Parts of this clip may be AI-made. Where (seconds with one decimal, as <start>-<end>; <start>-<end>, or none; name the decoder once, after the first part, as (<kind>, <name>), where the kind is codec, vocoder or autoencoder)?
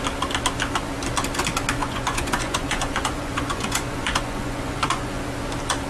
1.8-5.2 (vocoder, Vocos)